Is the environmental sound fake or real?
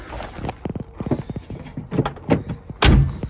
real